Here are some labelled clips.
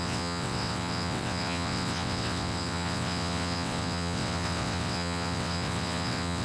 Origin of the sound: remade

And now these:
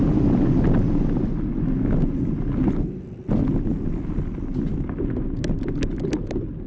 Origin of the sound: recorded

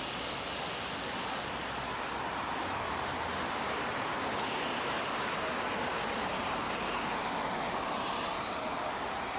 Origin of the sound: recorded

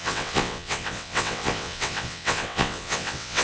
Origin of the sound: remade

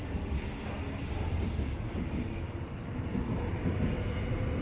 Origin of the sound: recorded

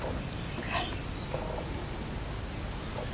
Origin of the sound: recorded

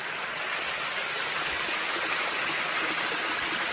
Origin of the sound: recorded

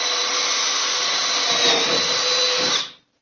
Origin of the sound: recorded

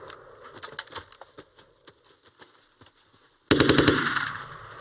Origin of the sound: recorded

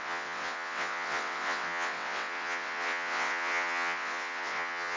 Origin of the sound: remade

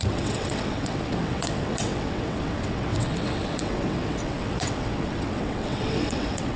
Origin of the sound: remade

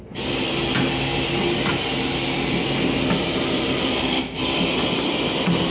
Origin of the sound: recorded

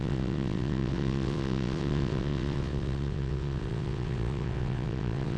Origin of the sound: remade